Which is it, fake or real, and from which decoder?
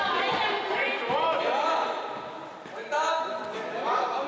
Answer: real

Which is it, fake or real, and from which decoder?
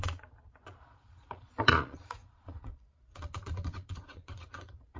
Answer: fake, vocoder, Vocos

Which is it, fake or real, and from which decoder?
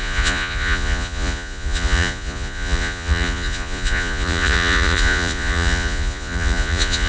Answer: fake, vocoder, Vocos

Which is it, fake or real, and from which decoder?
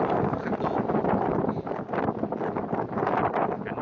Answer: real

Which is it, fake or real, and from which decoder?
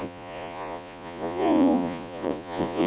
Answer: fake, vocoder, Vocos